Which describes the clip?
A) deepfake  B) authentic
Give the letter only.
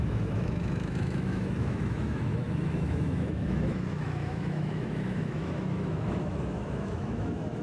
A